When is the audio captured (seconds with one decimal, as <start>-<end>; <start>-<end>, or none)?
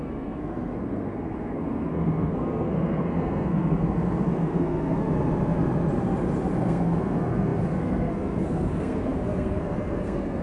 5.1-6.6